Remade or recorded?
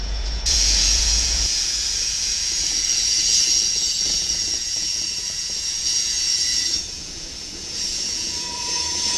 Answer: remade